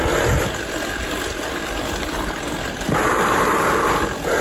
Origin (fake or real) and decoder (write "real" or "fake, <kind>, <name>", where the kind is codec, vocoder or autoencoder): real